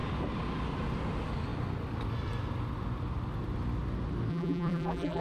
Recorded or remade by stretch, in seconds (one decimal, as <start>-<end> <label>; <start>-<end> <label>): 0.0-4.3 recorded; 4.3-5.2 remade

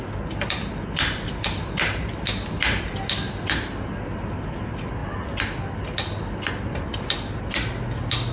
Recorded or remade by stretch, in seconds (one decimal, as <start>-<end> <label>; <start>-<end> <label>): 0.0-8.3 recorded

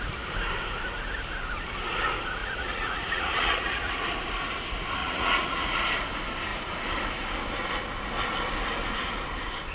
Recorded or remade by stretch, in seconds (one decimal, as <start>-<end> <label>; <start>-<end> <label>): 0.0-2.4 recorded; 2.4-3.9 remade; 3.9-5.0 recorded; 5.0-5.8 remade; 5.8-9.7 recorded